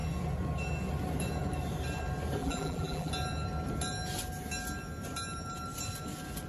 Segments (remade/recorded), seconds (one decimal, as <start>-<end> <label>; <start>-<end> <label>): 0.0-2.4 recorded; 2.4-3.1 remade; 3.1-6.5 recorded